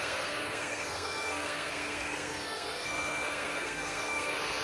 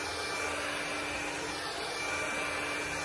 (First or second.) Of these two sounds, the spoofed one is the first